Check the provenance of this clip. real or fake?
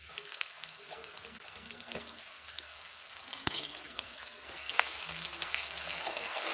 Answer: fake